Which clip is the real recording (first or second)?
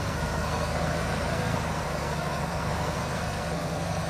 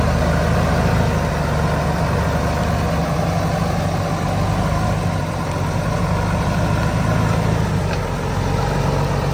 second